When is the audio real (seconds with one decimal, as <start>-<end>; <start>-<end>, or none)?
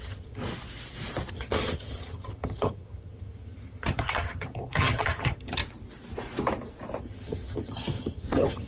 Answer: 0.4-1.3; 5.6-7.0